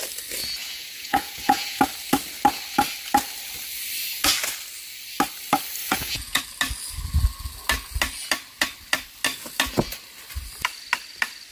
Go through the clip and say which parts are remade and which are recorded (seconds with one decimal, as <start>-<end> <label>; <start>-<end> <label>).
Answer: 0.0-0.6 recorded; 0.6-1.8 remade; 1.8-5.8 recorded; 5.8-6.4 remade; 6.4-11.5 recorded